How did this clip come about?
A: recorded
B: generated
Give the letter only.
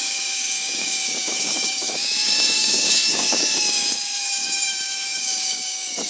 B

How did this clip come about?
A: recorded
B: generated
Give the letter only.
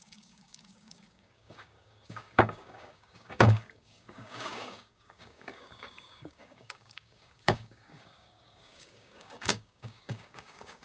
B